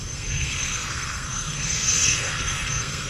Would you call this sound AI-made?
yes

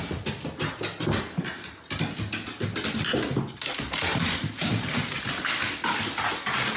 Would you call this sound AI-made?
no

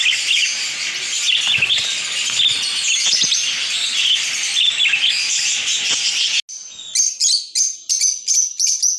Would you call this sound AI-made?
no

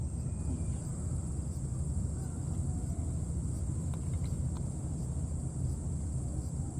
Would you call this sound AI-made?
no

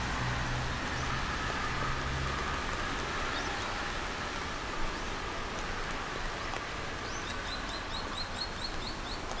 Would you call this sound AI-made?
no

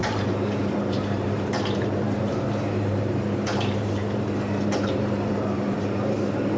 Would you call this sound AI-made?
yes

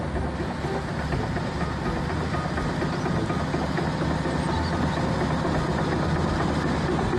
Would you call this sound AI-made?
no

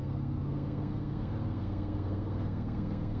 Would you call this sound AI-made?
yes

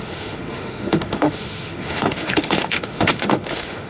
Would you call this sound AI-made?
yes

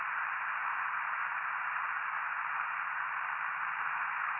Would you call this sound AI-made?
no